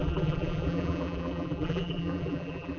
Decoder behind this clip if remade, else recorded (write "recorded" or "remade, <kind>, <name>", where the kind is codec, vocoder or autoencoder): remade, vocoder, BigVGAN v2